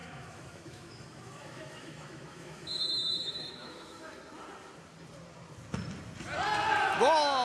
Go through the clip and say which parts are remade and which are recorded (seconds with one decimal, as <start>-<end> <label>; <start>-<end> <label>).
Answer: 0.0-4.2 remade; 4.2-7.4 recorded